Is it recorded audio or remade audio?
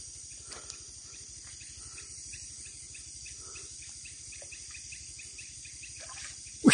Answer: recorded